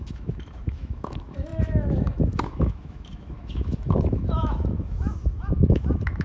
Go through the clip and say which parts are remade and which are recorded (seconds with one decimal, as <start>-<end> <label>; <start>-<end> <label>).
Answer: 0.0-6.2 remade

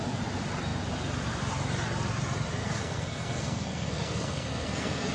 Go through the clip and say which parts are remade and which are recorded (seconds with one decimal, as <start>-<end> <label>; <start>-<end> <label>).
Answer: 0.0-2.6 recorded; 2.6-5.1 remade

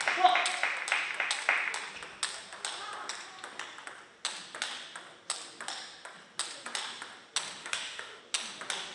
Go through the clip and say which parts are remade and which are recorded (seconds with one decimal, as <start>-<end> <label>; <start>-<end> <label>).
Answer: 0.0-7.6 recorded; 7.6-8.2 remade; 8.2-8.9 recorded

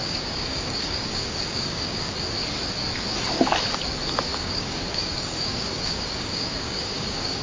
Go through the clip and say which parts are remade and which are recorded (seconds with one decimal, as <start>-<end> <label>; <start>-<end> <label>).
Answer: 0.0-2.1 remade; 2.1-4.3 recorded; 4.3-7.4 remade

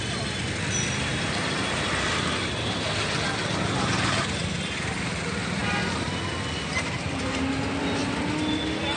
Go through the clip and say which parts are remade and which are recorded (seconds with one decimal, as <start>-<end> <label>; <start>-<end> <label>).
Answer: 0.0-9.0 recorded